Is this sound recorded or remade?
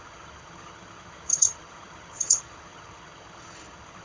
remade